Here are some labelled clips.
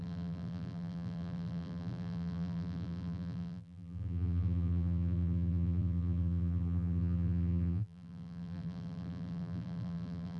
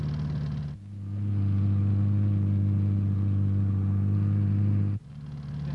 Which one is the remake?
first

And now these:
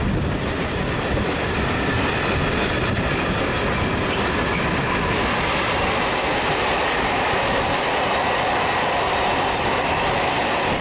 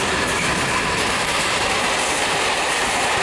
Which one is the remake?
second